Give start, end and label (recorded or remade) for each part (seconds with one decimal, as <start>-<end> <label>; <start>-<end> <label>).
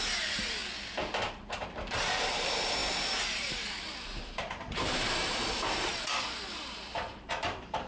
0.0-0.6 remade; 0.6-1.3 recorded; 1.3-5.9 remade; 5.9-6.5 recorded; 6.5-7.9 remade